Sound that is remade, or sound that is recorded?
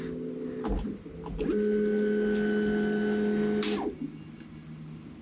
recorded